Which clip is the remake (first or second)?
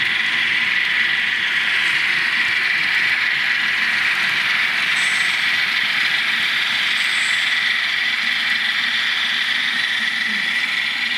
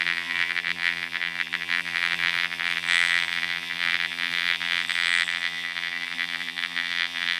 second